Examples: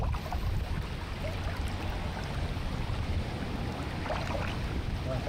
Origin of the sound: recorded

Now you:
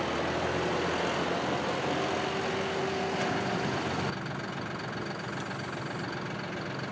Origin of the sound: recorded